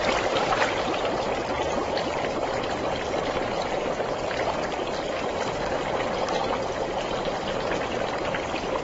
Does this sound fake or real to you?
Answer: fake